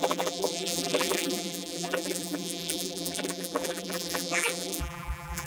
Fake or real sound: fake